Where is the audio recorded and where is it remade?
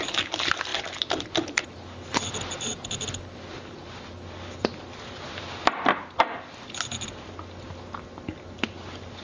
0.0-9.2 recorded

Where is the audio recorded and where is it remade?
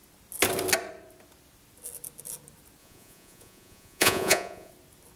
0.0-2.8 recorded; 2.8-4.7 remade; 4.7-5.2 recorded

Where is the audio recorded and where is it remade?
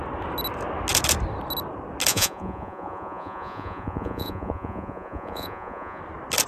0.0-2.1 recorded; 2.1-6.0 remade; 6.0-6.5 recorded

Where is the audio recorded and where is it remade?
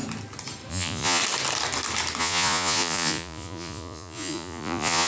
0.0-0.7 recorded; 0.7-1.2 remade; 1.2-2.2 recorded; 2.2-5.1 remade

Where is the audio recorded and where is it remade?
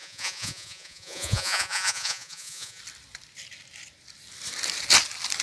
0.0-2.8 remade; 2.8-5.4 recorded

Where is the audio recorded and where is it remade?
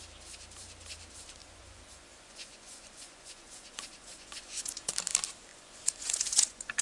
0.0-1.4 recorded; 1.4-4.9 remade; 4.9-5.5 recorded; 5.5-6.8 remade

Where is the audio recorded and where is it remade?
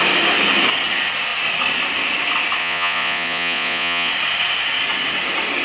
0.0-2.6 recorded; 2.6-4.1 remade; 4.1-5.6 recorded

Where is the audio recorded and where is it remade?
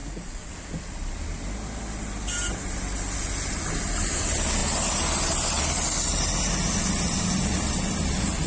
0.0-0.5 remade; 0.5-8.5 recorded